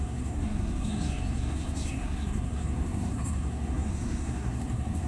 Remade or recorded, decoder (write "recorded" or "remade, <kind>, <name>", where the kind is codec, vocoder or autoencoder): remade, codec, SNAC